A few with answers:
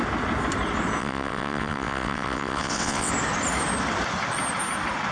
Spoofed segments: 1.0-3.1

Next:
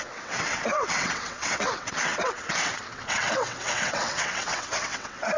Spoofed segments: 0.0-5.4

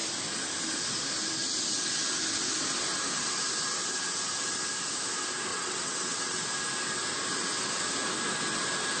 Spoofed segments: 5.5-6.4

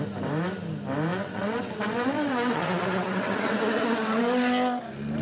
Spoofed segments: 1.1-4.2